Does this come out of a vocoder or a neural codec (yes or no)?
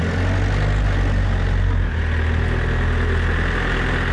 no